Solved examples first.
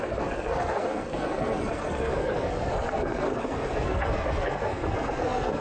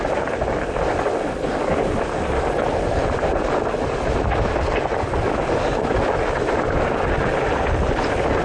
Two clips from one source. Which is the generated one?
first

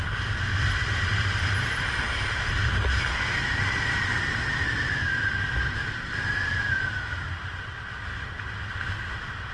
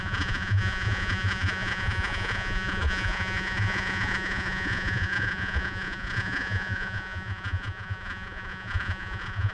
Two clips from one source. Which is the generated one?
second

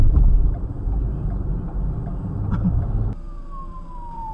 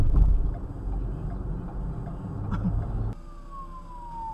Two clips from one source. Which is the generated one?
first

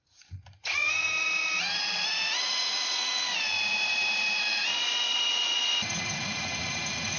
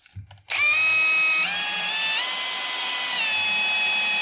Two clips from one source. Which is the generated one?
first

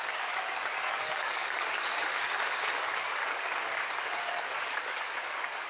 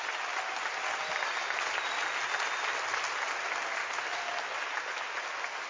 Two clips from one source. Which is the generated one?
first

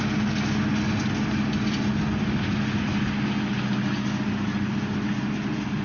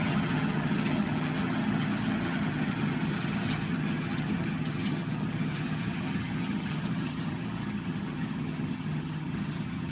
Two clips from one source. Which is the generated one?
second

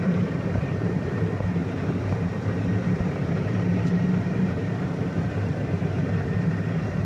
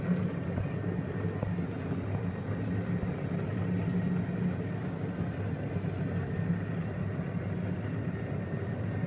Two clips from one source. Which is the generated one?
first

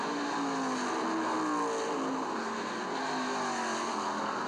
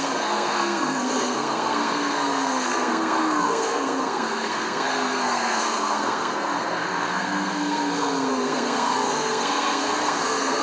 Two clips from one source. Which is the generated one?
second